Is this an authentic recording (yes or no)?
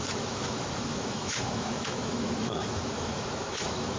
no